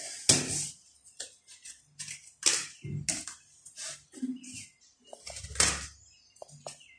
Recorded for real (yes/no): yes